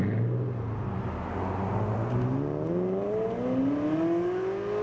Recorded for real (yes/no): yes